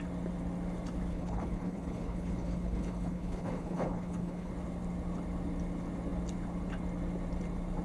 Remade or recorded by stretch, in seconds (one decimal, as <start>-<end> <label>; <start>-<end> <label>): 0.0-1.1 recorded; 1.1-4.5 remade; 4.5-7.8 recorded